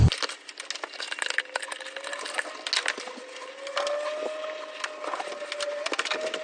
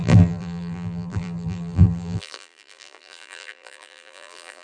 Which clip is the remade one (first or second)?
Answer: second